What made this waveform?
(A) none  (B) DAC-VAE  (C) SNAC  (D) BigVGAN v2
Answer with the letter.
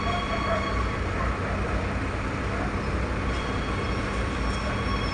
A